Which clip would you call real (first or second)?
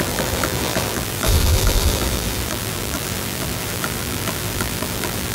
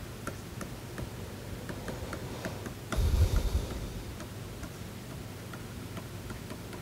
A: second